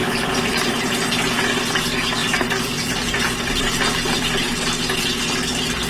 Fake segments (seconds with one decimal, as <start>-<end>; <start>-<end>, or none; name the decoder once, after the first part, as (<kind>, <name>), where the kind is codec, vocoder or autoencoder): 0.0-1.2 (vocoder, BigVGAN v2); 2.2-4.6

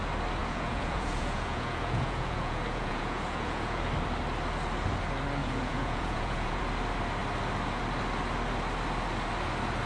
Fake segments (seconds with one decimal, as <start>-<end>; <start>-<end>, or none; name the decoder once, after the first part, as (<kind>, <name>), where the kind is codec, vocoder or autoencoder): 0.4-3.8 (vocoder, Vocos); 5.4-6.6

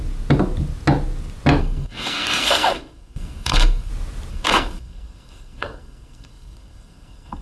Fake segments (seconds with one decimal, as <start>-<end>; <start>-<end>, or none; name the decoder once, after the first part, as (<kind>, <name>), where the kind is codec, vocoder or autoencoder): 1.6-3.9 (codec, SNAC); 4.3-7.4

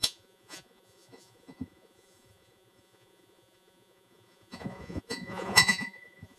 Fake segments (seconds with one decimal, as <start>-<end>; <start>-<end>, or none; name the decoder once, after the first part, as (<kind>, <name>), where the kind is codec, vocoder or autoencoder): 0.0-6.4 (vocoder, Vocos)

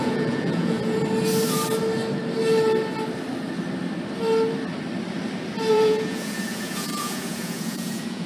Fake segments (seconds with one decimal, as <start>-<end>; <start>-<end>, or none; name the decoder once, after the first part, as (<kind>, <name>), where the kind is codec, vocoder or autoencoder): 0.0-1.0 (vocoder, Vocos); 5.7-8.3